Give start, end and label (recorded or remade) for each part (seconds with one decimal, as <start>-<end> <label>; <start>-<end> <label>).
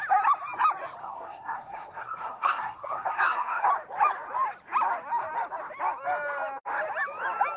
0.0-1.0 recorded; 1.0-3.7 remade; 3.7-7.6 recorded